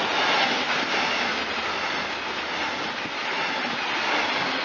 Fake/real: real